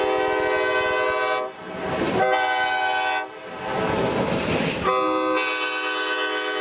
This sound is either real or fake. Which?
real